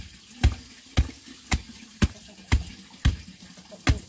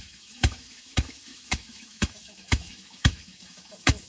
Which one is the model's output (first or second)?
second